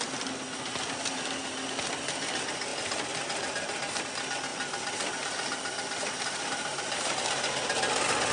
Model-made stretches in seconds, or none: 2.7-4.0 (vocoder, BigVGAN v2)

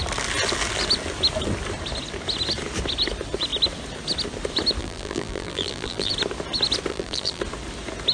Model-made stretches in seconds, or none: 4.8-6.1 (vocoder, BigVGAN v2); 6.9-7.4

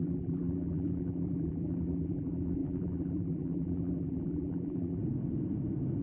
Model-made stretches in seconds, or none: 0.0-5.0 (vocoder, BigVGAN v2)

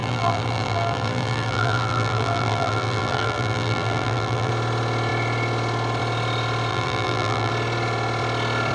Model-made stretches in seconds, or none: 0.0-4.5 (vocoder, BigVGAN v2); 6.7-7.5

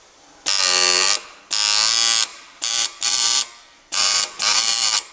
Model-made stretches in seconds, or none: 2.3-5.1 (vocoder, BigVGAN v2)

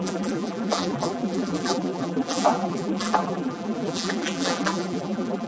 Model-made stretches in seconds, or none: 0.0-5.5 (vocoder, BigVGAN v2)

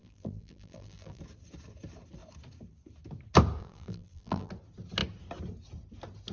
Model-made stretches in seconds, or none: 0.0-1.2 (vocoder, BigVGAN v2); 3.6-4.5

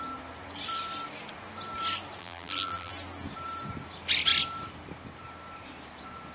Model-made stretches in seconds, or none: 2.2-2.9 (vocoder, BigVGAN v2)